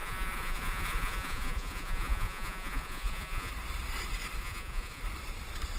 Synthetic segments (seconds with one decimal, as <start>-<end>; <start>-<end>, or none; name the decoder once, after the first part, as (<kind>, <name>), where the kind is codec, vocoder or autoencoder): 0.0-3.5 (vocoder, Vocos); 4.4-5.0